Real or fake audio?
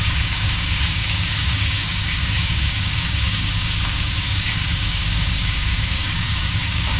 fake